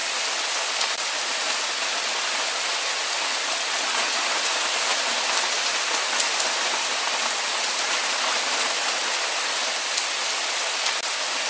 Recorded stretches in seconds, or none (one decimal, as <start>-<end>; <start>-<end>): 0.0-11.5